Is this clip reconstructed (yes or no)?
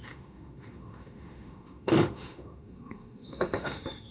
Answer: yes